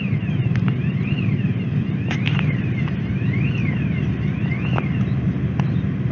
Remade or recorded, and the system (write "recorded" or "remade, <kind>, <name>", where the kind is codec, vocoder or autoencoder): recorded